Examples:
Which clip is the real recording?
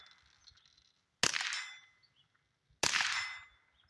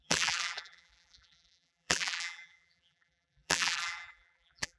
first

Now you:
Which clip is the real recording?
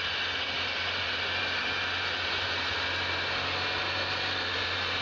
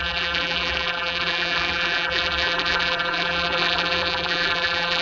first